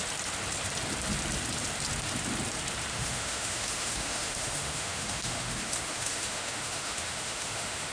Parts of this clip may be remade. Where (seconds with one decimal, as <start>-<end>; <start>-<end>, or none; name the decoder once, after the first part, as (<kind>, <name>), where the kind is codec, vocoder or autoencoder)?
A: 2.9-7.9 (autoencoder, DAC-VAE)